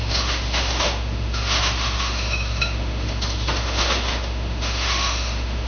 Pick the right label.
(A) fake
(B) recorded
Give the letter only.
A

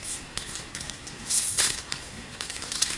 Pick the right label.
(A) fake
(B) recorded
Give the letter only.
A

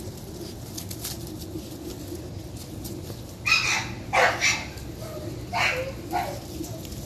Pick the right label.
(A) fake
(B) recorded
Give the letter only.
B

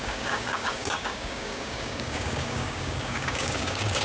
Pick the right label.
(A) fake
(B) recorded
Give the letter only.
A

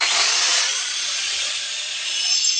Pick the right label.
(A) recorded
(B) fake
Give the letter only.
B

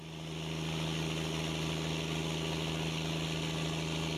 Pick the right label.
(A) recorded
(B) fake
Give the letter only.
A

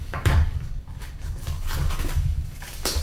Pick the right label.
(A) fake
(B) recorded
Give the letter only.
A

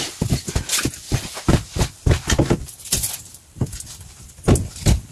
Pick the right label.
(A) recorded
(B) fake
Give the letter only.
A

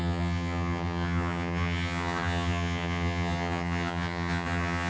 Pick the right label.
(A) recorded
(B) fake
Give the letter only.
B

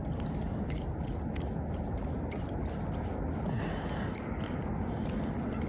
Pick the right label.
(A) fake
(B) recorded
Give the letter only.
B